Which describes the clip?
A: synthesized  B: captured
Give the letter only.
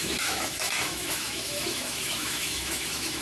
A